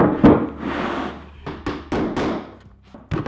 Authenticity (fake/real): real